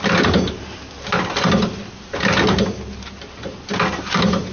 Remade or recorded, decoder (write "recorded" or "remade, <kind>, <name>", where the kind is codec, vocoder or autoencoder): recorded